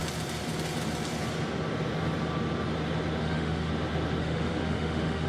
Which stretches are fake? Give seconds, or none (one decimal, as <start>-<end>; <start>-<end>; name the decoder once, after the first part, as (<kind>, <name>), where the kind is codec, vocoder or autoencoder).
3.2-3.7 (autoencoder, DAC-VAE); 4.2-5.3